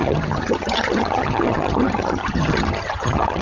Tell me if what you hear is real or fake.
fake